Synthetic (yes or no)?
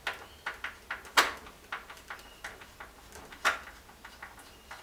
no